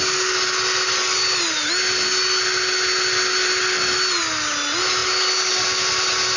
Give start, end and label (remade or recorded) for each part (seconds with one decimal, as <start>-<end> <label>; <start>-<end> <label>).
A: 0.0-6.4 recorded